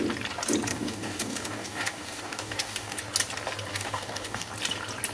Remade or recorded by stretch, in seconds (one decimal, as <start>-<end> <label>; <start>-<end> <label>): 0.0-0.7 recorded; 0.7-3.0 remade; 3.0-3.7 recorded; 3.7-4.5 remade; 4.5-5.1 recorded